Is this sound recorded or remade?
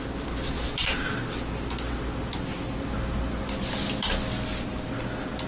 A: recorded